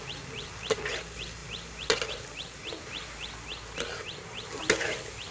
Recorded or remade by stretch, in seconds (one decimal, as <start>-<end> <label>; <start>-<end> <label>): 0.0-5.3 recorded